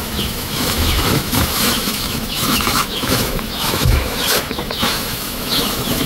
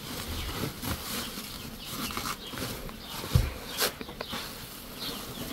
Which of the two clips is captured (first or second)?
second